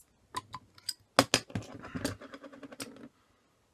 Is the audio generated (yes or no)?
no